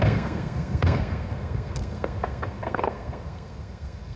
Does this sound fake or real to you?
fake